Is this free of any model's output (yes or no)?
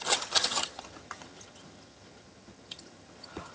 no